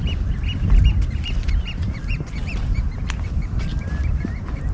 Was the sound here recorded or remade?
recorded